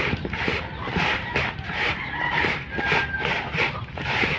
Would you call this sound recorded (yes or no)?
no